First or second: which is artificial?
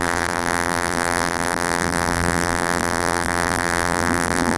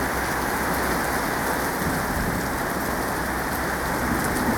first